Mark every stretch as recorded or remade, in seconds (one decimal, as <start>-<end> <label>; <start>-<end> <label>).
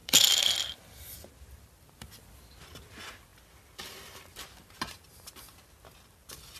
0.0-1.3 remade; 1.3-3.3 recorded; 3.3-4.9 remade; 4.9-6.6 recorded